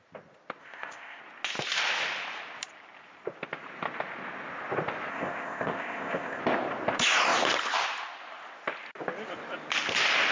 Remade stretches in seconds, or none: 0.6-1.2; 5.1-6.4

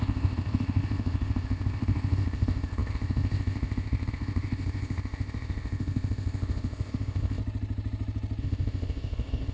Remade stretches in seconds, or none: 0.0-7.4; 8.4-9.5

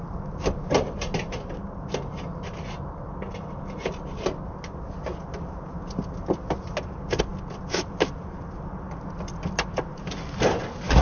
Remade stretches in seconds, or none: none